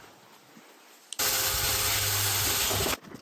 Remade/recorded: recorded